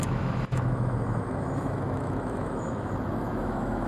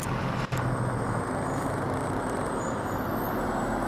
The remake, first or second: first